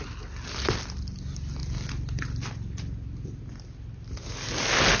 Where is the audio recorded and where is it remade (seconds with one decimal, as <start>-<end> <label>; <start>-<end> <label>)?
0.0-5.0 recorded